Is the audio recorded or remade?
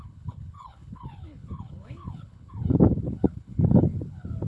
remade